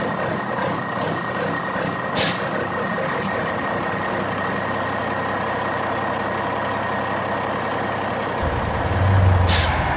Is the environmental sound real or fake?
real